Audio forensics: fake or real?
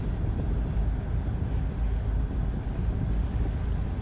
real